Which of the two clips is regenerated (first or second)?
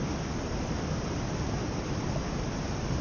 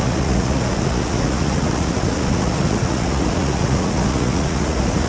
second